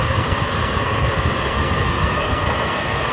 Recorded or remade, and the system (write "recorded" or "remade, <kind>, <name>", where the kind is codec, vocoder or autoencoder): remade, codec, SNAC